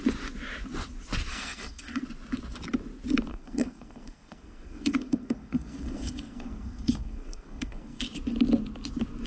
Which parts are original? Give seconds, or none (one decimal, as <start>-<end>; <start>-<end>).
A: 0.0-1.3; 2.0-3.3; 8.0-9.3

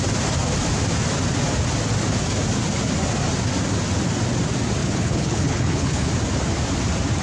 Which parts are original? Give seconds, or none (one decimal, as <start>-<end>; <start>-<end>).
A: 0.0-4.8; 6.1-7.2

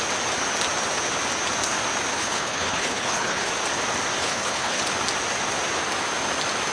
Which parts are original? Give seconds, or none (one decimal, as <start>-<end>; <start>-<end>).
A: 0.0-2.1; 3.5-4.2; 4.8-6.7

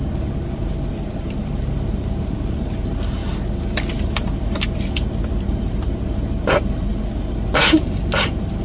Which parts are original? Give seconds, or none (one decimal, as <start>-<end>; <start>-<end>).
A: 0.0-8.6

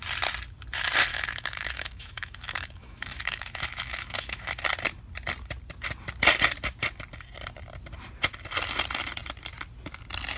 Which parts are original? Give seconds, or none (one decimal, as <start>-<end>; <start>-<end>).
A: 0.0-1.1; 4.6-10.4

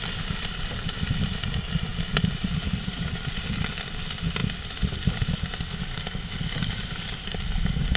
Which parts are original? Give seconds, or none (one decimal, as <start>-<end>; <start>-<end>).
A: 4.4-6.8

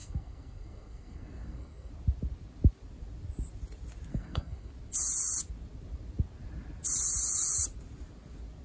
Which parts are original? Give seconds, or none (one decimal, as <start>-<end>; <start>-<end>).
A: 1.9-4.1; 4.7-8.6